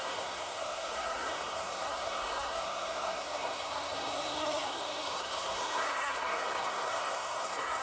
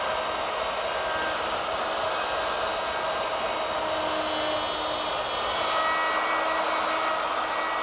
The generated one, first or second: first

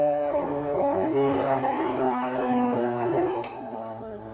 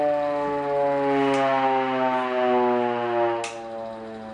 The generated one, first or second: first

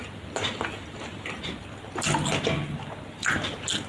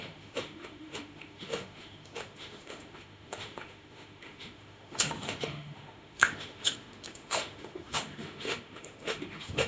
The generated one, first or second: second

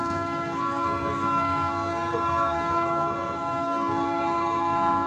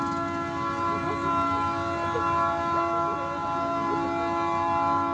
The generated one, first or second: first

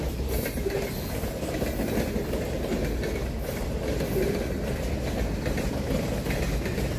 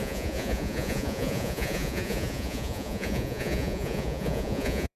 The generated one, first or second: second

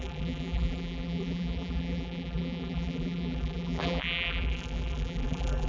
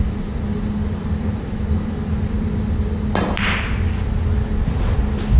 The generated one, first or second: first